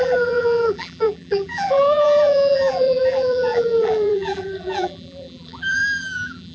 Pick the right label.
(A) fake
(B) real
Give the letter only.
A